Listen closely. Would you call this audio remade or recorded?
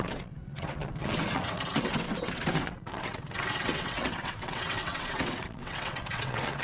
remade